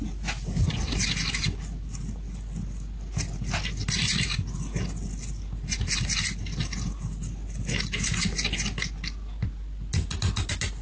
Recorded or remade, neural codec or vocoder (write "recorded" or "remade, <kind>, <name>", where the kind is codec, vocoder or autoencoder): recorded